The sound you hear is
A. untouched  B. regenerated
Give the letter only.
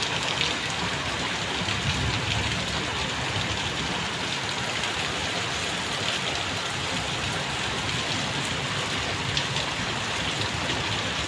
A